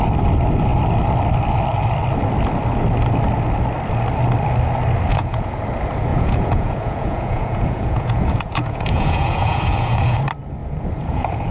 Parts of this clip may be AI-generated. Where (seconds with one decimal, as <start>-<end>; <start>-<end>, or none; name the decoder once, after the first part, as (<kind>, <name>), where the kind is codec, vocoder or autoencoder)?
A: 5.1-5.6 (vocoder, Vocos); 6.1-10.2; 10.6-11.5